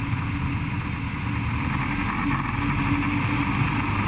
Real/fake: real